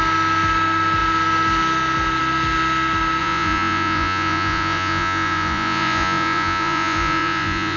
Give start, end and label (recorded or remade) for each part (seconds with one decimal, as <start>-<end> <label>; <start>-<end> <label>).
0.0-3.2 recorded; 3.2-7.8 remade